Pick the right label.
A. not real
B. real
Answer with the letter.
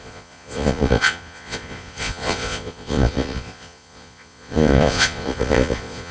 A